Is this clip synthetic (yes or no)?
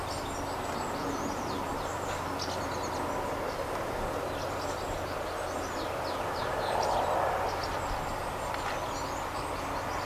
no